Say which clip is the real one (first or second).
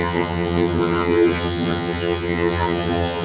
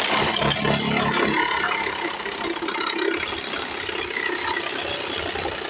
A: second